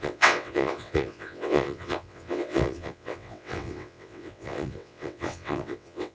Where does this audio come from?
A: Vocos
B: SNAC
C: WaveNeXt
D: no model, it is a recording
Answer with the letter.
C